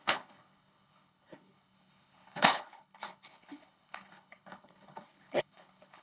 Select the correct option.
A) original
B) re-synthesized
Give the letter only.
B